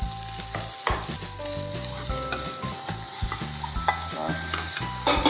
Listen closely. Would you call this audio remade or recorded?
recorded